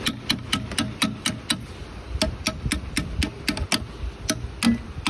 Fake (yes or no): no